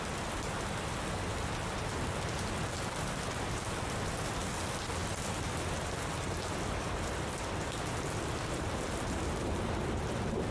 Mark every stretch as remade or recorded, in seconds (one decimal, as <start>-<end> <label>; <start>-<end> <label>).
0.0-10.5 recorded